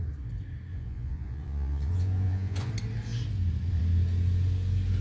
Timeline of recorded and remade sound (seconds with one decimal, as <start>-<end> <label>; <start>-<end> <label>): 0.0-0.7 recorded; 0.7-2.7 remade; 2.7-5.0 recorded